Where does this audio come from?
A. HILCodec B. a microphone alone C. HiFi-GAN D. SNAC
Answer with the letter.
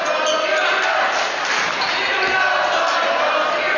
B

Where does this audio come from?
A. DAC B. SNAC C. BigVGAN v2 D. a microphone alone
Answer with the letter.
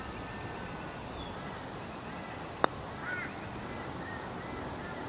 D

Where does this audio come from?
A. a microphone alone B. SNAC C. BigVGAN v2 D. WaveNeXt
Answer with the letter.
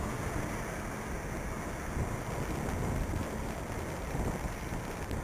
A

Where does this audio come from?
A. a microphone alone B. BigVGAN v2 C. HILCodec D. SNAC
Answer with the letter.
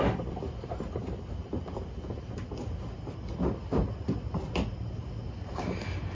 A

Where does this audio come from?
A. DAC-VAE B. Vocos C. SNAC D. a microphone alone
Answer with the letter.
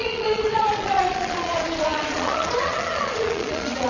B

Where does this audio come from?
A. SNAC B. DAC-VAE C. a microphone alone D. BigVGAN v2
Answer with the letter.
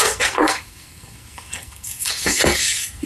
A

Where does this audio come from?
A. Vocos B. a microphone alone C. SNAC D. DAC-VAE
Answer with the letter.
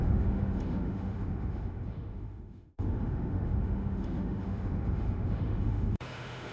D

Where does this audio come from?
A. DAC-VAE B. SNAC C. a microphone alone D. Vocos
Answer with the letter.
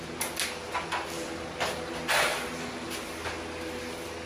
C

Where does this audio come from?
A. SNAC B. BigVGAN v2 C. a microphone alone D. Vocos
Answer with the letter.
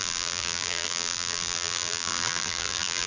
B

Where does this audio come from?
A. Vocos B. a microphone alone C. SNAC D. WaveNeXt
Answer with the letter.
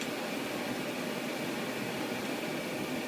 B